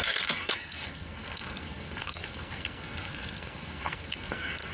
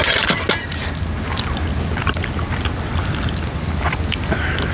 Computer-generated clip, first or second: first